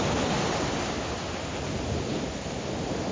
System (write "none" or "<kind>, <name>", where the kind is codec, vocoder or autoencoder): none